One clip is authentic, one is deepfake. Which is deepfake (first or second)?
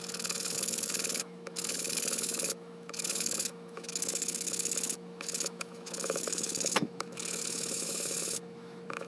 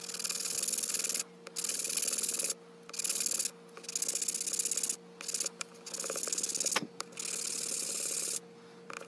first